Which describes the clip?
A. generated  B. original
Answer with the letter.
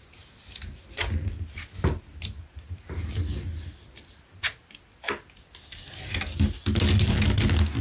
B